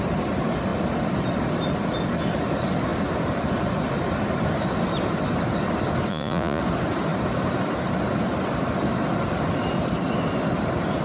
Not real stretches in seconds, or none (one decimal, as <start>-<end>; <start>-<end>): 6.1-6.6